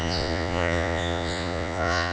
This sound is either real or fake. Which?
fake